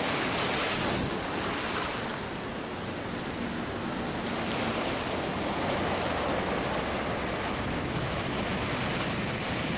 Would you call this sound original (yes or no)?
yes